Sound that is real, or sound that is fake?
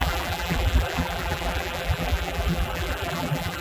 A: fake